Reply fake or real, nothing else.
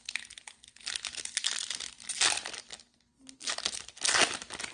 real